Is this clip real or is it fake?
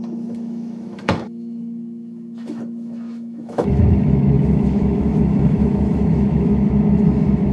fake